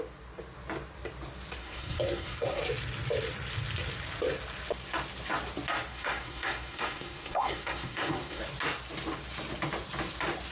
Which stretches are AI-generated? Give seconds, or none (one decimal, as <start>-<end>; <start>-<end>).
1.6-2.6; 5.9-8.4